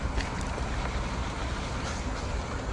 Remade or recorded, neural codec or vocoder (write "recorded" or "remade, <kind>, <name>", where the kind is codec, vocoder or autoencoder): remade, vocoder, BigVGAN v2